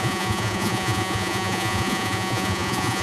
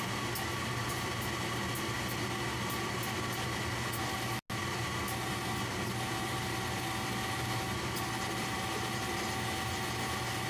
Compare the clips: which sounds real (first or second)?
second